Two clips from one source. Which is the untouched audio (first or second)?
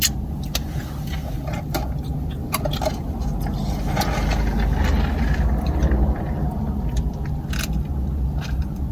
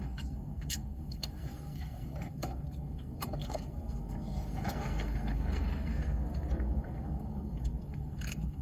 first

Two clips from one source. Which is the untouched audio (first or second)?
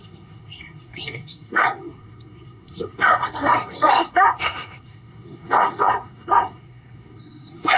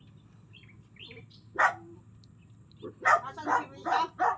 second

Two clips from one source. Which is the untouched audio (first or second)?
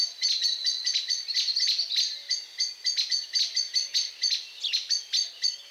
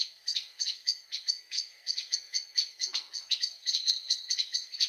first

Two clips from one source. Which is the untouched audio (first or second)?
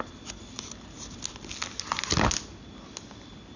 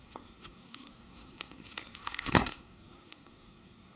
first